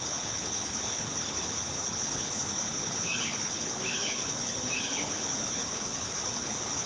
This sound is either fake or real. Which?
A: fake